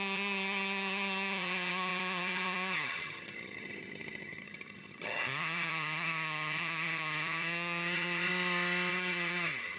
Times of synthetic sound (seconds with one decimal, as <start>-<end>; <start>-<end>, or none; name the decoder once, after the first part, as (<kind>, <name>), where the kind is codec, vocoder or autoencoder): 0.0-8.3 (vocoder, HiFi-GAN); 8.9-9.8